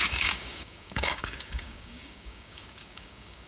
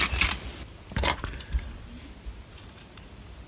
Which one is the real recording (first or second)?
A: second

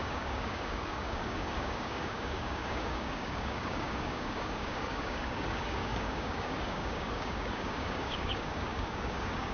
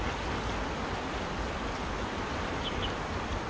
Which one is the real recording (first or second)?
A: second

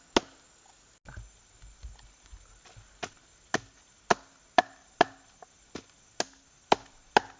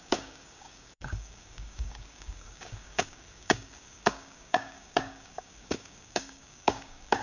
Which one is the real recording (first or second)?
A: first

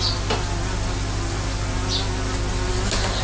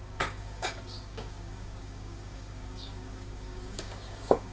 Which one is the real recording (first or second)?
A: first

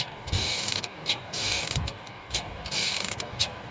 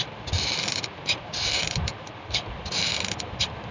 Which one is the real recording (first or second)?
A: second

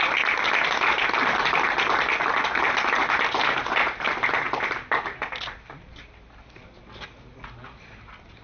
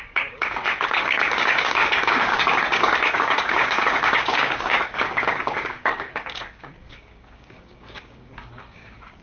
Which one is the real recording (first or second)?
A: first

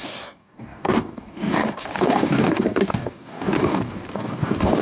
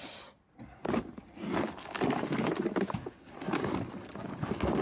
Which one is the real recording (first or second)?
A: second